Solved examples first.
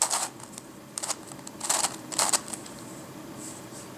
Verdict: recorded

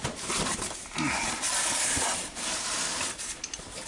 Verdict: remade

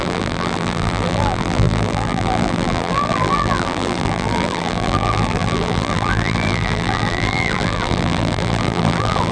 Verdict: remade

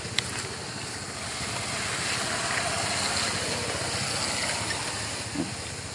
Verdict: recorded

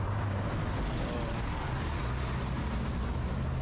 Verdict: recorded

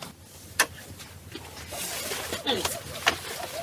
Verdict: recorded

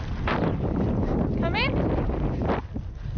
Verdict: recorded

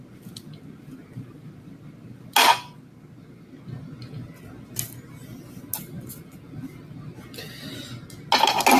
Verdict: recorded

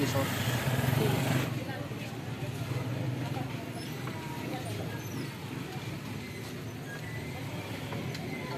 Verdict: recorded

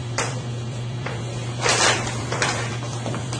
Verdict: remade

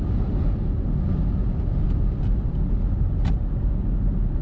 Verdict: recorded